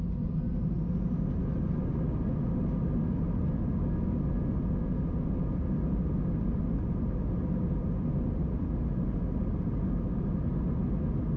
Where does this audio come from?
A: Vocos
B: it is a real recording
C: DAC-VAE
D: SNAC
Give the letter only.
B